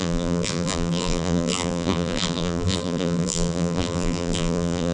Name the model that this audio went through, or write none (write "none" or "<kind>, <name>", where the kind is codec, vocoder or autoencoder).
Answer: vocoder, BigVGAN v2